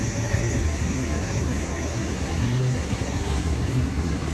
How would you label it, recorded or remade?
remade